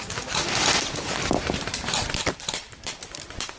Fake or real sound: fake